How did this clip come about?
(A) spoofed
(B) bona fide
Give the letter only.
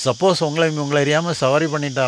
B